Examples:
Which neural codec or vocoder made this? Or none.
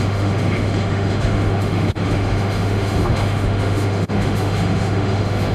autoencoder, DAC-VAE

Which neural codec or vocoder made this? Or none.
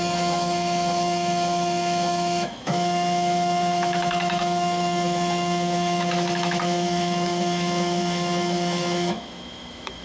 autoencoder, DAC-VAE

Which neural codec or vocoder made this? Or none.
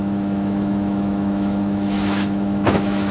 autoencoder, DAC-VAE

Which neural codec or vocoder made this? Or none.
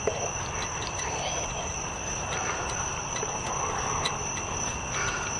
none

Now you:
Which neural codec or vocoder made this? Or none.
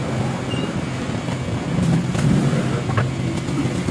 none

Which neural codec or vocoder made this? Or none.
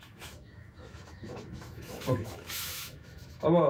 autoencoder, DAC-VAE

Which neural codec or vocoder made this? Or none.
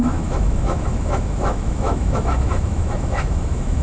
autoencoder, DAC-VAE